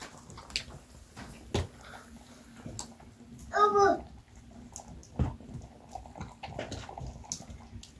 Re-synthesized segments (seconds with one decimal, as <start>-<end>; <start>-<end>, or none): none